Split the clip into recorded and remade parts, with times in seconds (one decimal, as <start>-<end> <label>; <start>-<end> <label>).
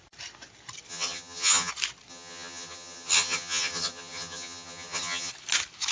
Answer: 0.0-0.9 recorded; 0.9-1.7 remade; 1.7-2.1 recorded; 2.1-5.3 remade; 5.3-5.9 recorded